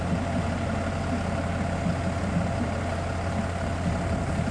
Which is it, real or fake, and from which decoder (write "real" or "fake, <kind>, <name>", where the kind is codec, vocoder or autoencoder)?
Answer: real